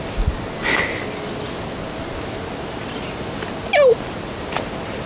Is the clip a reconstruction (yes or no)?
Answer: no